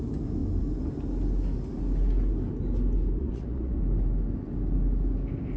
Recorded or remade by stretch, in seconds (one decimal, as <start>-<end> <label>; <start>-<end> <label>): 0.0-3.2 recorded; 3.2-3.8 remade; 3.8-5.6 recorded